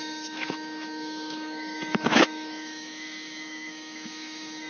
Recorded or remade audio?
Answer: remade